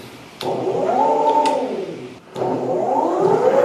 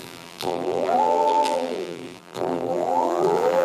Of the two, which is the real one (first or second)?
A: first